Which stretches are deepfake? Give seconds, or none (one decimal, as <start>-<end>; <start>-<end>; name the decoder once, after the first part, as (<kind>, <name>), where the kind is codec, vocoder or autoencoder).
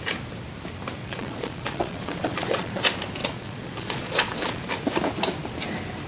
1.0-2.8 (vocoder, Vocos); 3.2-4.7